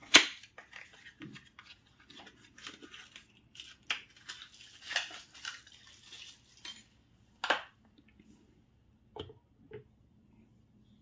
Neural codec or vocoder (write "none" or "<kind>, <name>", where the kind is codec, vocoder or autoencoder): none